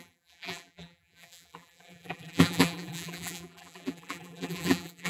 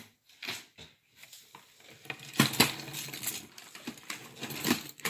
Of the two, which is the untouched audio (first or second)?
second